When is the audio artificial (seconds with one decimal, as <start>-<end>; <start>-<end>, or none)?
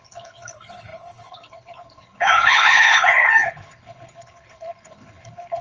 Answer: 0.0-5.6